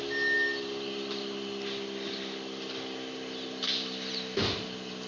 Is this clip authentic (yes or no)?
yes